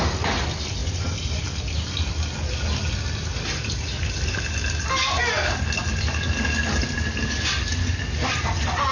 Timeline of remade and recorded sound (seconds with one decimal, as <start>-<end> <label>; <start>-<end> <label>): 0.0-0.8 recorded; 0.8-1.4 remade; 1.4-8.9 recorded